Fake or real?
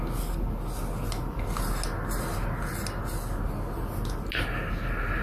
real